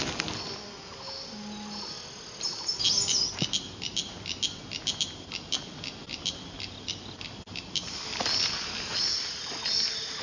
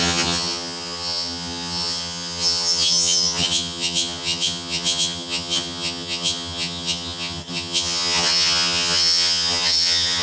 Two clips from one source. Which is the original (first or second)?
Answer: first